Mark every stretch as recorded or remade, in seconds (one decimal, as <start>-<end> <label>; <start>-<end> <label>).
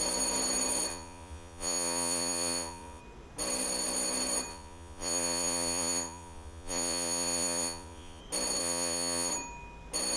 0.0-0.9 recorded; 0.9-3.0 remade; 3.0-4.5 recorded; 4.5-8.2 remade; 8.2-8.6 recorded; 8.6-9.3 remade; 9.3-10.2 recorded